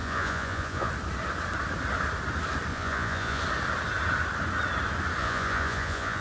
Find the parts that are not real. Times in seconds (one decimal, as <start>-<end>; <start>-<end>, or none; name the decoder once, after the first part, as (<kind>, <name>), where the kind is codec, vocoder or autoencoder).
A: 0.0-0.9 (vocoder, Vocos); 2.7-3.4; 5.2-6.2